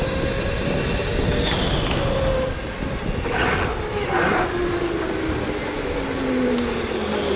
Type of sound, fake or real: real